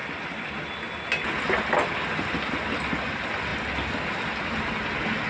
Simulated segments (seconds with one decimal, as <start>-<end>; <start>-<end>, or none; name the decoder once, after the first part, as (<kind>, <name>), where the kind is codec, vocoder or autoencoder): none